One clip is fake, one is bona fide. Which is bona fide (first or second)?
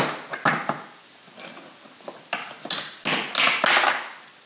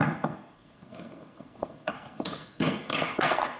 first